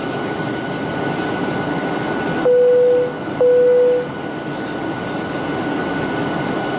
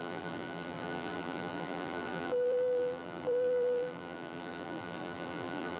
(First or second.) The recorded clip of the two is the first